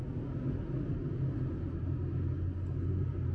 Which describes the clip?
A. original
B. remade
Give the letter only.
A